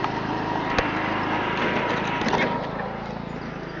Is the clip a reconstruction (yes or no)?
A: no